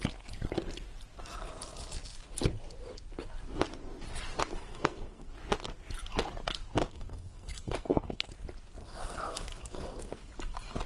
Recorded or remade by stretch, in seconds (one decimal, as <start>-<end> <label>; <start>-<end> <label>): 0.0-4.6 recorded; 4.6-5.3 remade; 5.3-6.8 recorded; 6.8-8.3 remade; 8.3-8.8 recorded; 8.8-10.3 remade; 10.3-10.9 recorded